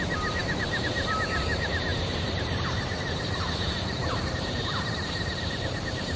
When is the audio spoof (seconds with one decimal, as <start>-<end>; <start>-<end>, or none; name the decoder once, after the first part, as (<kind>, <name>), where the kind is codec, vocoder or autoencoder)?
0.0-6.2 (vocoder, BigVGAN v2)